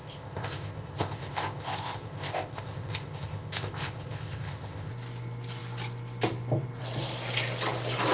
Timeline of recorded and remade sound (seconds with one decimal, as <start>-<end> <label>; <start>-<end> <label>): 0.0-4.9 remade; 4.9-8.1 recorded